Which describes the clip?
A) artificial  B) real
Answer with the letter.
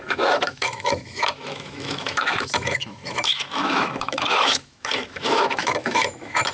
A